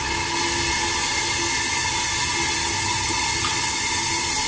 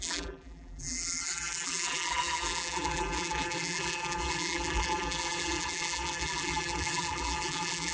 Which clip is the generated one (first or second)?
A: second